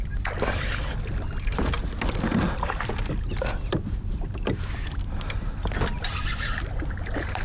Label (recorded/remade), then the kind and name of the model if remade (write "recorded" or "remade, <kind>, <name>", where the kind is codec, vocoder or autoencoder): recorded